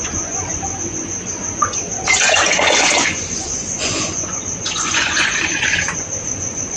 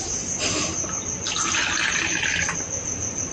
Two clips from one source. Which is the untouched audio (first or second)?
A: second